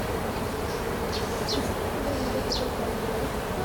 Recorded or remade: remade